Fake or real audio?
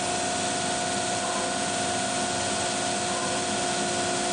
real